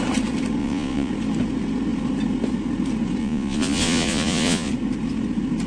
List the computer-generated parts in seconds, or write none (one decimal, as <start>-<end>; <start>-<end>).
0.6-1.1; 3.2-4.7